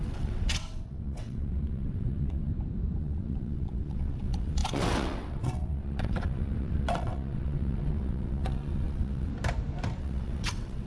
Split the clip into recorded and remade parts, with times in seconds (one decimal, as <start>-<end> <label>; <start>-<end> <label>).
0.0-2.5 remade; 2.5-3.0 recorded; 3.0-9.3 remade; 9.3-10.0 recorded; 10.0-10.9 remade

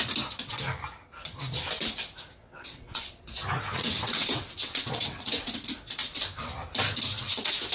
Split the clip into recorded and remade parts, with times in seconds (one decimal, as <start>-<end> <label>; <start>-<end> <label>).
0.0-2.4 recorded; 2.4-3.1 remade; 3.1-3.8 recorded; 3.8-5.6 remade; 5.6-7.7 recorded